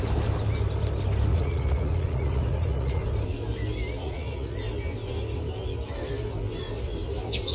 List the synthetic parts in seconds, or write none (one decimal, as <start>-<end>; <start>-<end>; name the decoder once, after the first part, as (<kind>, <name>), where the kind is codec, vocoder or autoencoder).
1.3-3.0 (vocoder, Vocos); 4.0-4.6